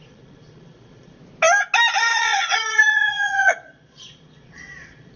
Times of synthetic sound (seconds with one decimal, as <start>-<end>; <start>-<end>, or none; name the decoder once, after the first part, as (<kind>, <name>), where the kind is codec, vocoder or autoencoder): 0.0-1.2 (vocoder, Vocos); 2.2-5.2